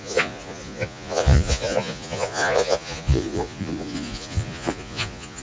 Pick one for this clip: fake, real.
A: fake